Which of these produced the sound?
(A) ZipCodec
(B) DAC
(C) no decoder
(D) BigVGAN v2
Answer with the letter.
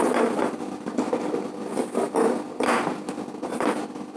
C